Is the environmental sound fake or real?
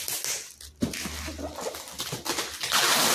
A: real